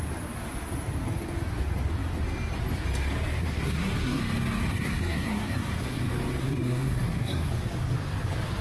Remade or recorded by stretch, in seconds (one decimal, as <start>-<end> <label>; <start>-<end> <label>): 0.0-3.4 recorded; 3.4-4.2 remade; 4.2-4.7 recorded; 4.7-6.0 remade; 6.0-6.4 recorded; 6.4-7.5 remade; 7.5-8.6 recorded